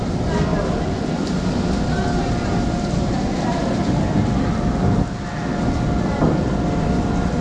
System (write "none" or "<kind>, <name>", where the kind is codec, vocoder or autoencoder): none